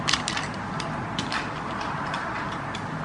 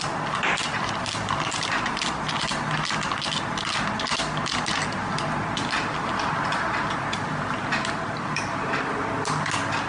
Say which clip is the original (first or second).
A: second